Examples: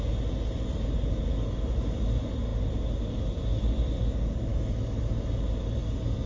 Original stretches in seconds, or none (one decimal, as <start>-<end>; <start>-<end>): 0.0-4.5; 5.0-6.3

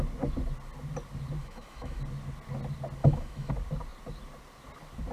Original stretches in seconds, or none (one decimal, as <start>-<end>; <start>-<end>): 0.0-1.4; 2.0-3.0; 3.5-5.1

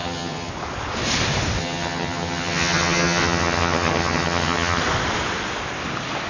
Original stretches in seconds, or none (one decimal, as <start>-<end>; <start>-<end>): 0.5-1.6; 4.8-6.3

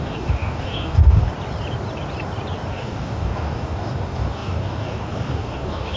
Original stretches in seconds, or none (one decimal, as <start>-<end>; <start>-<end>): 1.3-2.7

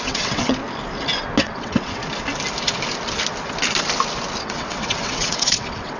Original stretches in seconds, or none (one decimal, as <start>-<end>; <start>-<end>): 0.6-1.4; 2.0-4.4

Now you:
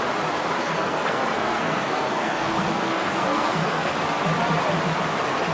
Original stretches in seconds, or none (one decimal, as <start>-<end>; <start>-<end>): 0.0-0.6; 3.9-5.5